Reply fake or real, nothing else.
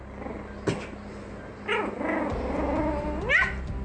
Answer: real